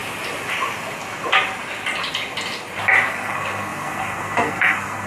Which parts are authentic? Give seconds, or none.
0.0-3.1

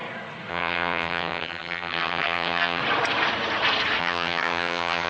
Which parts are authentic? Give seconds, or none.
0.0-0.5; 2.8-4.0

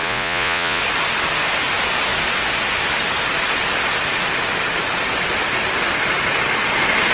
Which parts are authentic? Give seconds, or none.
0.8-7.1